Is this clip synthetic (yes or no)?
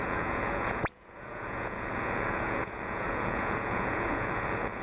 yes